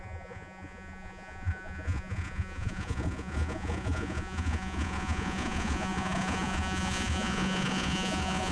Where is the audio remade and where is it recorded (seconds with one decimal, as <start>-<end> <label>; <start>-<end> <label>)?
0.0-8.5 remade